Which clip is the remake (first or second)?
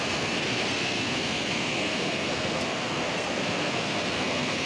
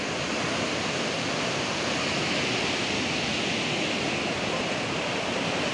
first